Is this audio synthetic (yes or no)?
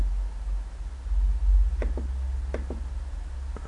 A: no